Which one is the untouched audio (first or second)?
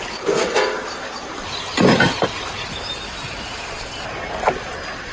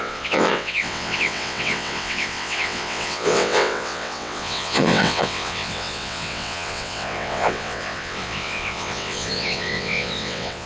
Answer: first